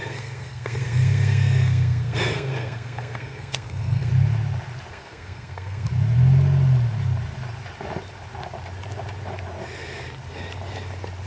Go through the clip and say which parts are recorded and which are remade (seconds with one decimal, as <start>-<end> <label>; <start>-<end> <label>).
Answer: 0.0-4.1 remade; 4.1-4.9 recorded; 4.9-5.9 remade; 5.9-11.3 recorded